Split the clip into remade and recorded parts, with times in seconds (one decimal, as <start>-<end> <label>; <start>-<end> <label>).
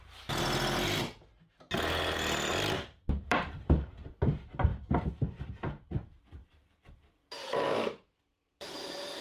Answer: 0.0-2.5 recorded; 2.5-4.1 remade; 4.1-4.7 recorded; 4.7-5.9 remade; 5.9-6.4 recorded; 6.4-9.2 remade